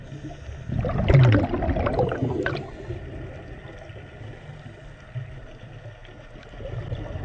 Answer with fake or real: real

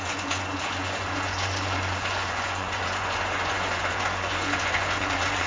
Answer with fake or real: fake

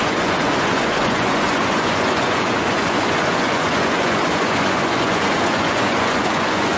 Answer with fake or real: fake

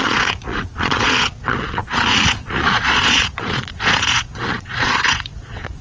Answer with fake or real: fake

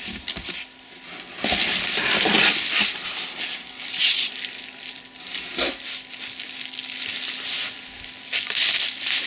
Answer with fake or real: real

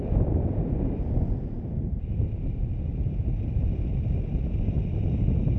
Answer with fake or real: real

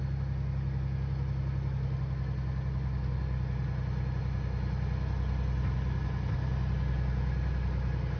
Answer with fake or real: real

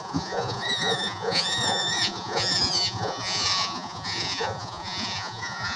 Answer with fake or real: fake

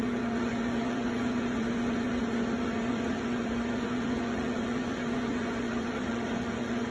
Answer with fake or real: fake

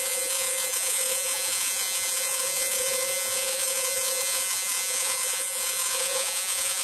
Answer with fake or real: fake